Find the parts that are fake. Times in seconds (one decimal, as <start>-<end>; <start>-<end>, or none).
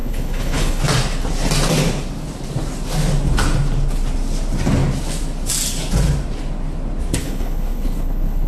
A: 0.0-0.8; 7.2-8.5